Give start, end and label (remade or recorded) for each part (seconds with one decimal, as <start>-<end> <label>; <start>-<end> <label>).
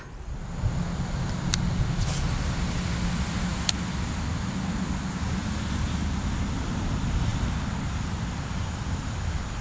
0.0-9.6 recorded